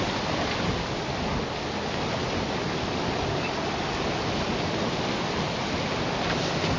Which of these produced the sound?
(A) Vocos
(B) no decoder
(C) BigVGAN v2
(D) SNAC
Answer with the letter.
B